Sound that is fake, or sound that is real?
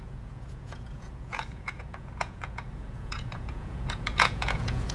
fake